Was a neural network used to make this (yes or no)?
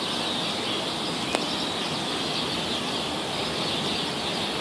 no